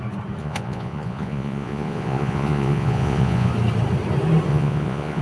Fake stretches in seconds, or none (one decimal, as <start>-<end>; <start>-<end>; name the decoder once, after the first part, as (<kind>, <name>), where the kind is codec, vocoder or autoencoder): 0.4-3.5 (vocoder, Vocos); 4.5-5.2